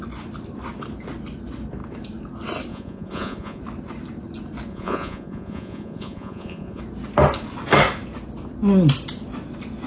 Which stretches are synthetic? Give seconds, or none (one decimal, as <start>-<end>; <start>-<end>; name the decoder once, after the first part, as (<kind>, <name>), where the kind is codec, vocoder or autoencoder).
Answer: 2.7-3.6 (vocoder, Vocos); 4.7-6.8